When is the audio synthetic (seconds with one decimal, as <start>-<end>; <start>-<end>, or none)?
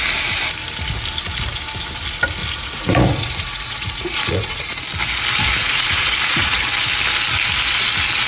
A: 2.4-4.8; 5.6-6.7